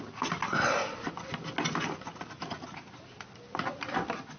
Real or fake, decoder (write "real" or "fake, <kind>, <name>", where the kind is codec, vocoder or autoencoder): real